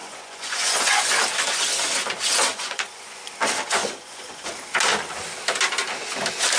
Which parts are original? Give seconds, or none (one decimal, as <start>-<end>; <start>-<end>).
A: 1.0-2.5; 3.2-3.8; 4.5-6.6

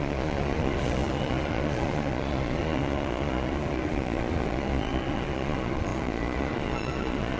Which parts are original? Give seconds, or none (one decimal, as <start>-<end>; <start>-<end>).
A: none

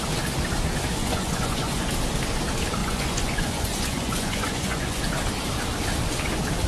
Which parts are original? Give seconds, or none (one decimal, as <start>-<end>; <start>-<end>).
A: 0.0-1.0; 1.9-2.8; 5.0-6.7

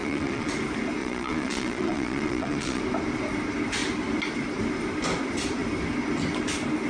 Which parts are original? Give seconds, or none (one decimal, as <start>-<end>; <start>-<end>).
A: 0.5-1.0; 2.8-6.9

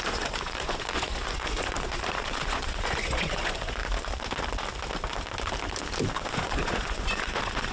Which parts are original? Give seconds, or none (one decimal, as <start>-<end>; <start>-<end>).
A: 3.8-6.3